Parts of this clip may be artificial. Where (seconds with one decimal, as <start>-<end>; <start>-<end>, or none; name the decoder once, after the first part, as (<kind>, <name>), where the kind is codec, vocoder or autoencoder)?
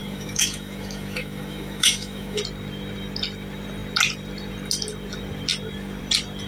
0.0-2.4 (autoencoder, DAC-VAE)